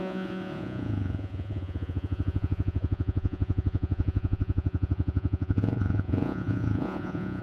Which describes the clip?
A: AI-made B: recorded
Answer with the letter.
A